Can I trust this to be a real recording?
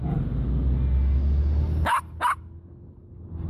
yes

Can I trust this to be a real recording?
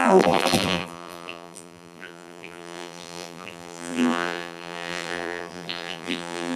no